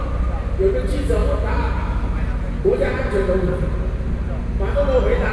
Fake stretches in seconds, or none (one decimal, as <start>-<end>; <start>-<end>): none